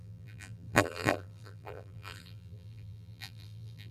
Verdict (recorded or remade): remade